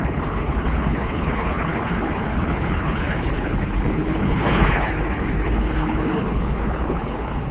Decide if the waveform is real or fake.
fake